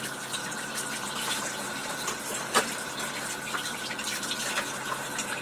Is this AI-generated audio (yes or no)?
yes